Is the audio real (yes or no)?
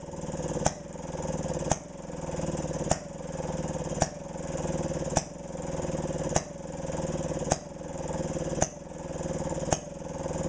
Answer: yes